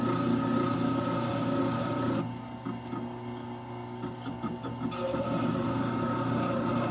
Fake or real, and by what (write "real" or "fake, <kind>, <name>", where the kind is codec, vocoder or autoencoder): real